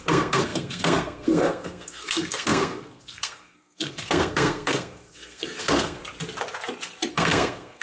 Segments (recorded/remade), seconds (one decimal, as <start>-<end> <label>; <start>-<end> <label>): 0.0-6.0 remade; 6.0-7.1 recorded; 7.1-7.8 remade